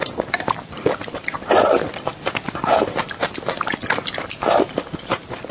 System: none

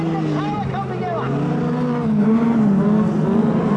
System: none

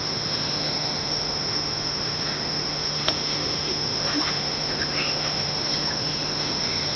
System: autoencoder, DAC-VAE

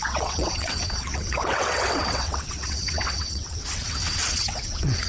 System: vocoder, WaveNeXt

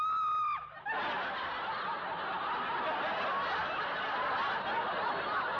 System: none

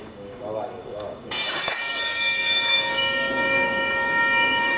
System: codec, DAC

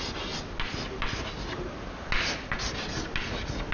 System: none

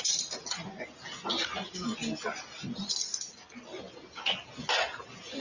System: none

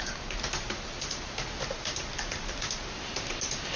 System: none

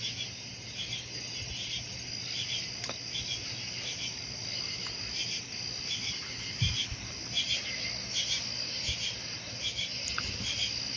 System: none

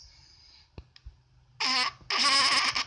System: none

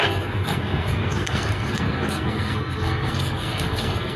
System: codec, SNAC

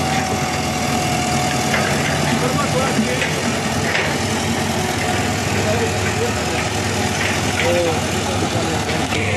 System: none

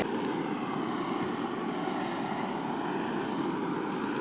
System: none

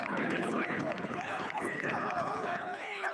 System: codec, HILCodec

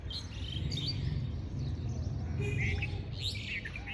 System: none